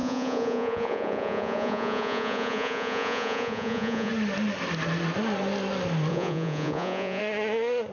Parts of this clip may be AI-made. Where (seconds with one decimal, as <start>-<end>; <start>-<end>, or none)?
0.0-4.1; 6.1-7.2